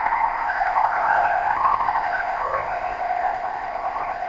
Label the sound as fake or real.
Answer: fake